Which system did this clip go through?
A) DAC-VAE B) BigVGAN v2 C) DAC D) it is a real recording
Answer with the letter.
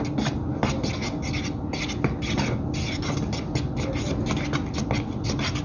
D